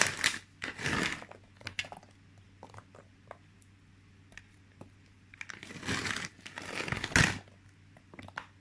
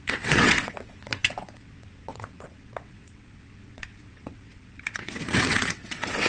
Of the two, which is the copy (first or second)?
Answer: second